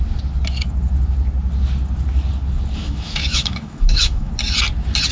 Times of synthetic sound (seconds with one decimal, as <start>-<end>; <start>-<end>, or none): 2.8-4.3